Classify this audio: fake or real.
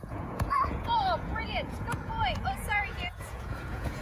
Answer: fake